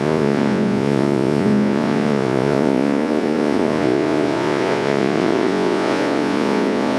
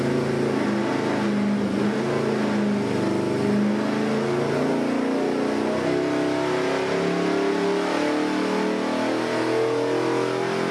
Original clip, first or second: second